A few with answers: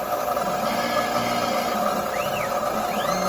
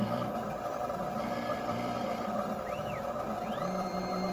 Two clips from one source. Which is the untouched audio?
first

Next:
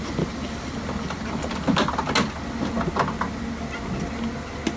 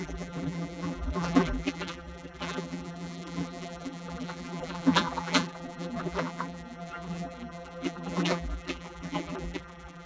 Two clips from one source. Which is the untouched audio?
first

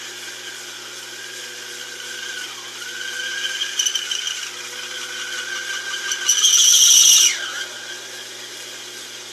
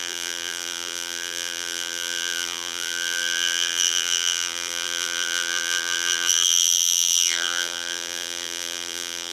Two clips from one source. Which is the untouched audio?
first